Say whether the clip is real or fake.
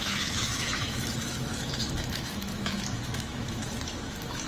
fake